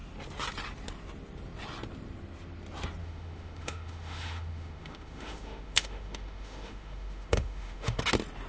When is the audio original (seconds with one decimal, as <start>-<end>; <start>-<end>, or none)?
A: 0.0-3.0; 8.0-8.5